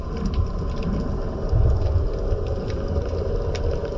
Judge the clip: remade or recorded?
recorded